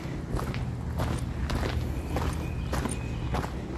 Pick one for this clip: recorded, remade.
recorded